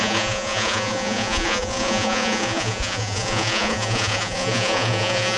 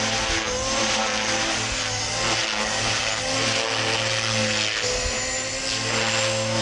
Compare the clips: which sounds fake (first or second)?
first